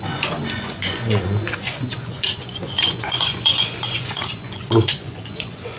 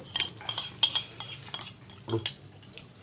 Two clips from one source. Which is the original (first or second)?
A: second